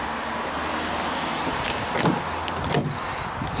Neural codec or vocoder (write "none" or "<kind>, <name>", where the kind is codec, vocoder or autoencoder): none